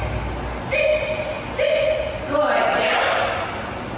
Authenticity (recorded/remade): recorded